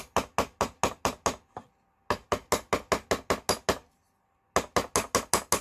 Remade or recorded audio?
recorded